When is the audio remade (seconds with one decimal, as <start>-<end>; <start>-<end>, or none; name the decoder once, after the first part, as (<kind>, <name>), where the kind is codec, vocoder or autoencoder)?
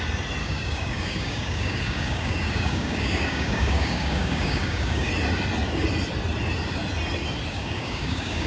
0.4-5.1 (codec, DAC); 7.5-8.5